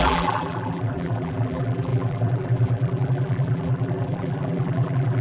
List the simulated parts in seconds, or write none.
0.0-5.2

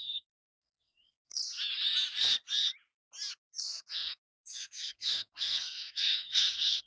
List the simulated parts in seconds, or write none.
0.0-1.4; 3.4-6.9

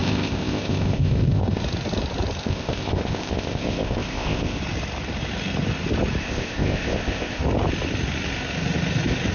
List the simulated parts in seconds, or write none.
0.0-1.6; 2.4-4.6; 6.2-7.4

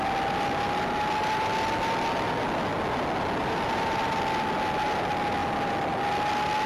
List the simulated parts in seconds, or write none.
2.7-4.2

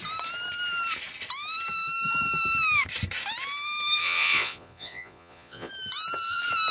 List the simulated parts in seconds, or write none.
4.0-5.7

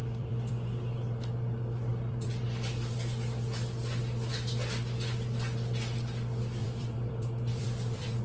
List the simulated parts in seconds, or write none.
0.0-0.5; 1.9-2.4; 6.6-8.2